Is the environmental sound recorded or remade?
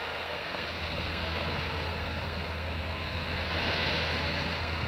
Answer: remade